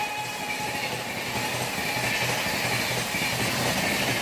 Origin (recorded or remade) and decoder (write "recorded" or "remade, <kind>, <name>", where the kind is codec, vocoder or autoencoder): recorded